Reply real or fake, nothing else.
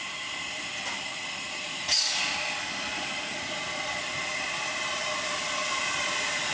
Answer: fake